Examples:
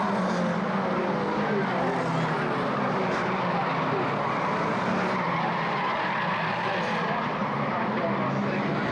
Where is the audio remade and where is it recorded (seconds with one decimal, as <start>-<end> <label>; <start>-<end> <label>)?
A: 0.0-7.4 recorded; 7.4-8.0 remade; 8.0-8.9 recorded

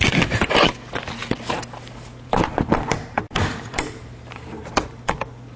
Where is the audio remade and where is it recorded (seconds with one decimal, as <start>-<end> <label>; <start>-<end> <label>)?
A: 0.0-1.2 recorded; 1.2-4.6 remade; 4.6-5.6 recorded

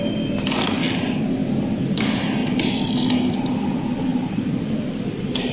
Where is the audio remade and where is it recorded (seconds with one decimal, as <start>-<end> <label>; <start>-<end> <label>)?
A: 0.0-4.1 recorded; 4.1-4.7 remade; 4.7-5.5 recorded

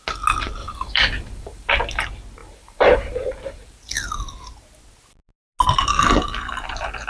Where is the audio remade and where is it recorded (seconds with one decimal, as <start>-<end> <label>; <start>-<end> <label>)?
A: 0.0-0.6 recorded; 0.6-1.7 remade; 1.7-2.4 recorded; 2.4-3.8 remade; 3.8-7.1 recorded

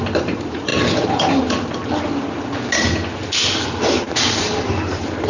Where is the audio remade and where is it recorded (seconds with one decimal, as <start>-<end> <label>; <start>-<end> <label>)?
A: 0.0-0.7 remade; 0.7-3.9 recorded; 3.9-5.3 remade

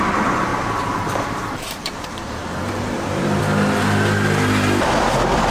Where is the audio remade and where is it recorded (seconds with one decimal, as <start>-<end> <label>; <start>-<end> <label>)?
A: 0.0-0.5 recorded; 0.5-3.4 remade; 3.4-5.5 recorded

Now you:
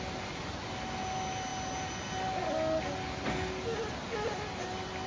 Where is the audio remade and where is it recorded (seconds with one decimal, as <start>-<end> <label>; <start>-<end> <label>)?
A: 0.0-5.1 recorded